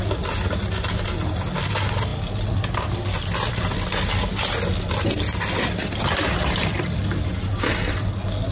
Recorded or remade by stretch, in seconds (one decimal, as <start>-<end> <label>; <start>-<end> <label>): 0.0-8.5 recorded